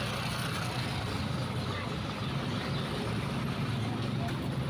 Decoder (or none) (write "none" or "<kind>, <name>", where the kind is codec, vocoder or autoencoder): none